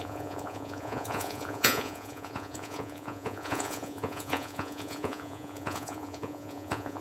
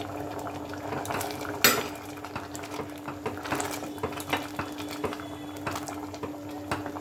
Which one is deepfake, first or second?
first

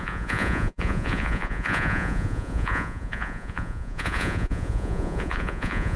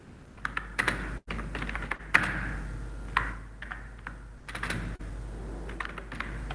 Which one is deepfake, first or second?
first